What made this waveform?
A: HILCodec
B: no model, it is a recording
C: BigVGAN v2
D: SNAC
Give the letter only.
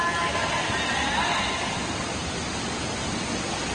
B